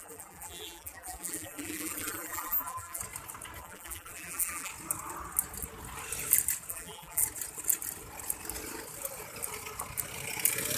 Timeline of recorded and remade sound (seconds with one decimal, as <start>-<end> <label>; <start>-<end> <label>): 0.0-3.0 remade; 3.0-3.6 recorded; 3.6-4.7 remade; 4.7-6.7 recorded; 6.7-7.2 remade; 7.2-10.8 recorded